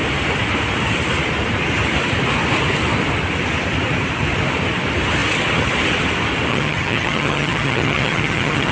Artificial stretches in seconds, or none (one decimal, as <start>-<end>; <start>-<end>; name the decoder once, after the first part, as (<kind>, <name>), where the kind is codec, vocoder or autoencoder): 6.5-8.7 (vocoder, HiFi-GAN)